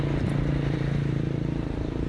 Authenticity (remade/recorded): remade